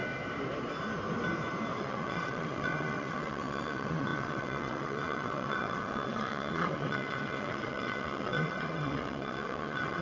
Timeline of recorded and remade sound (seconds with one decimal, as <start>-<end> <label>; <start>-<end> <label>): 0.0-1.8 recorded; 1.8-10.0 remade